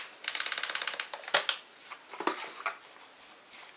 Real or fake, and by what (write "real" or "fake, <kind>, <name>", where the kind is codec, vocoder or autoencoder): real